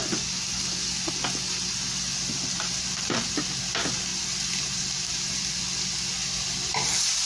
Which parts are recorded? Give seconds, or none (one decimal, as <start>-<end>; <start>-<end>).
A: 0.0-2.1; 3.4-4.1; 5.6-7.3